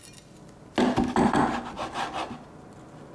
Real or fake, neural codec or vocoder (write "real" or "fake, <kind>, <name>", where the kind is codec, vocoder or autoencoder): real